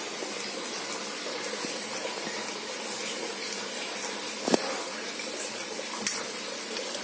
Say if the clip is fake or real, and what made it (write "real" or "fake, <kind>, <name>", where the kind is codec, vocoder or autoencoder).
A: real